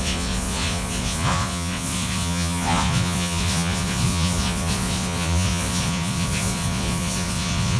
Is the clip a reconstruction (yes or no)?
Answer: yes